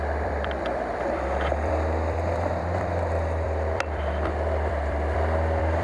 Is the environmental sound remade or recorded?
remade